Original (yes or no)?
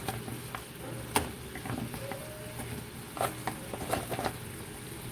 yes